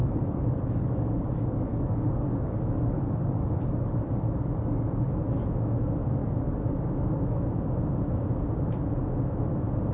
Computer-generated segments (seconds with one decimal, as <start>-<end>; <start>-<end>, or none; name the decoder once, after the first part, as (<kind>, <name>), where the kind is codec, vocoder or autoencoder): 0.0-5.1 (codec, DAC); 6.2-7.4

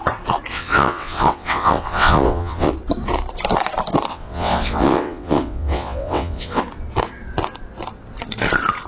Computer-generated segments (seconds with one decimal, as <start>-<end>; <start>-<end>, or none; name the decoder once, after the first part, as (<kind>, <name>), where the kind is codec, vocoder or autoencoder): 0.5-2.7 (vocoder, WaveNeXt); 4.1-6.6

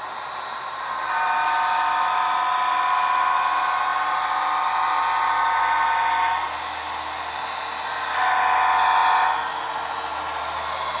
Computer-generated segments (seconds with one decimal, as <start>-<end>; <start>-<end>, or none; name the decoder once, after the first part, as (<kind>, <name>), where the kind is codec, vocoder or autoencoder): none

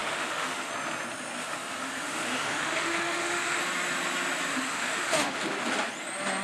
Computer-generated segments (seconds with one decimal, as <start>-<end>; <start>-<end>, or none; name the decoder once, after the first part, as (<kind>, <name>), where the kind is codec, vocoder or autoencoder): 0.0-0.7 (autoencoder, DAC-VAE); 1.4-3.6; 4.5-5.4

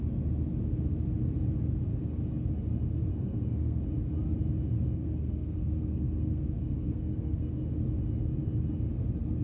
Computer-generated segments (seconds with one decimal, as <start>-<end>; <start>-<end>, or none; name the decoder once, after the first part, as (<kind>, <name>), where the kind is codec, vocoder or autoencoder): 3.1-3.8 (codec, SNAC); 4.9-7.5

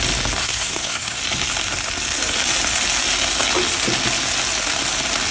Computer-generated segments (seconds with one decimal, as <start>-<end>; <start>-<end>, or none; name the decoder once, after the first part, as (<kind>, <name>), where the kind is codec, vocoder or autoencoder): 0.4-1.2 (codec, SNAC)

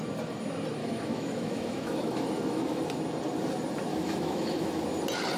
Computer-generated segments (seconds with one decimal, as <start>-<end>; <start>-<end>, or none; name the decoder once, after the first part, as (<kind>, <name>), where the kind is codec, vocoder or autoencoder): 0.8-2.8 (autoencoder, DAC-VAE); 3.9-4.8